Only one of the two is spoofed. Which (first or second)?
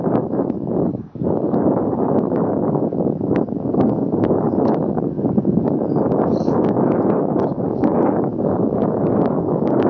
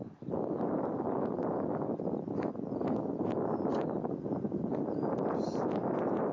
first